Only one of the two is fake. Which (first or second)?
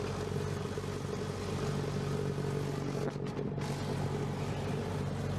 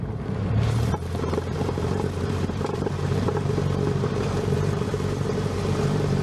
second